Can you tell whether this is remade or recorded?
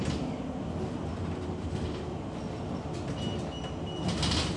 recorded